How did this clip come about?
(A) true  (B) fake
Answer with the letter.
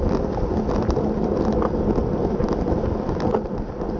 B